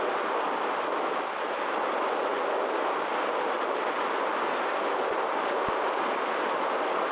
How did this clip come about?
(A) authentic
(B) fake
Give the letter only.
A